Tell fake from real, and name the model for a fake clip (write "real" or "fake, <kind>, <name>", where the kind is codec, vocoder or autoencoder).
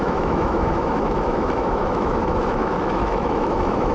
fake, autoencoder, DAC-VAE